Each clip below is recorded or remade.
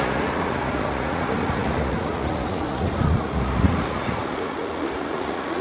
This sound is remade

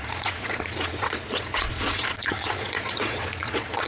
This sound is remade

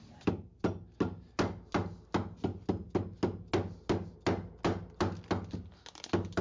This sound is recorded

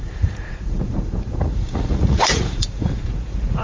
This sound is remade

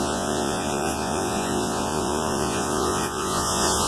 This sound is remade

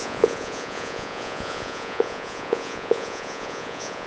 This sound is remade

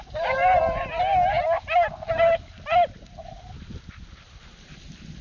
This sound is recorded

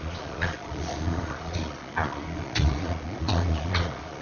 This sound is remade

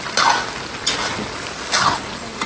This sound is recorded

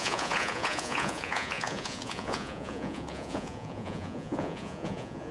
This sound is remade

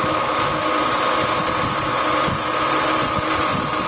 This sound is recorded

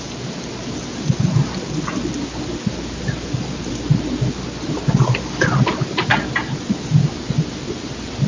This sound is recorded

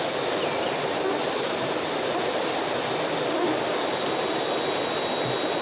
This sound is recorded